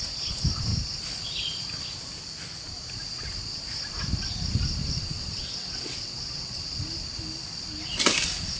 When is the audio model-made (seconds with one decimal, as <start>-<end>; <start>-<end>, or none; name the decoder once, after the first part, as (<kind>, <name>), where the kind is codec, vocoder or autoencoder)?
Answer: 4.8-6.6 (vocoder, WaveNeXt)